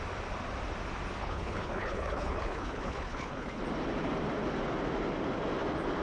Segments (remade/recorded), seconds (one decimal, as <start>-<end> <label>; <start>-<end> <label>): 0.0-1.2 recorded; 1.2-3.6 remade; 3.6-6.0 recorded